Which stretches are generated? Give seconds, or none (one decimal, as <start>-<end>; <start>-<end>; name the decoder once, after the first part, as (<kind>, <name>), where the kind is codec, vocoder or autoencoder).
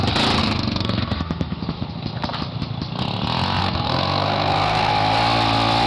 0.4-1.6 (codec, SNAC); 3.6-4.9